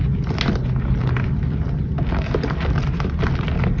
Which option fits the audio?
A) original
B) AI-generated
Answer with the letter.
A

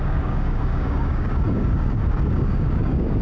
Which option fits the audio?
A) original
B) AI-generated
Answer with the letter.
B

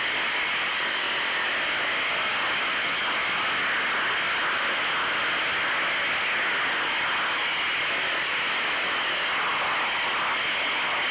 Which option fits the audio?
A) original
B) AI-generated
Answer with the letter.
A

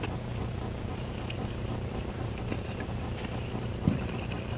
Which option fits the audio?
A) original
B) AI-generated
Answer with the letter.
A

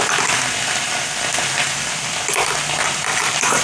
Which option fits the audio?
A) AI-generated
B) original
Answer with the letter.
B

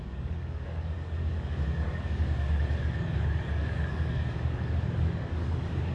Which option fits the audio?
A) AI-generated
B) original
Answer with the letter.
A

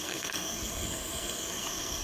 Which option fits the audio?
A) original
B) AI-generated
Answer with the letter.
B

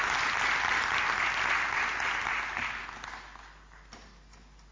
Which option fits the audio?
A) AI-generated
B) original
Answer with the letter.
B